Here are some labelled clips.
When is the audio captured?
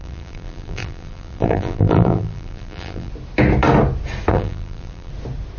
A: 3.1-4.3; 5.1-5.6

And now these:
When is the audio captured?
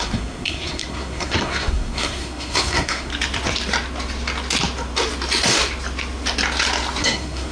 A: 3.1-7.0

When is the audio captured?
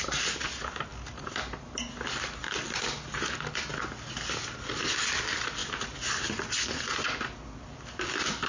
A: 0.0-8.5